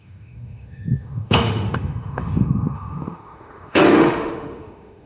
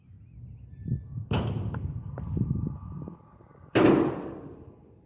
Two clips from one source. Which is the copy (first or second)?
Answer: first